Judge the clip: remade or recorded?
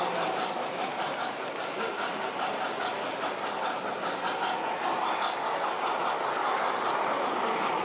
recorded